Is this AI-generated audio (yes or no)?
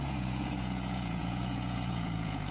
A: yes